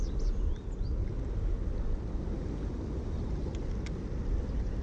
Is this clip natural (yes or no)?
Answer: yes